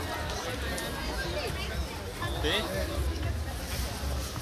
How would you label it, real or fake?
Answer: real